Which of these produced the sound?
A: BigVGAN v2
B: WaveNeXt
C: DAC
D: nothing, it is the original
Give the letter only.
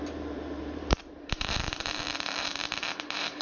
A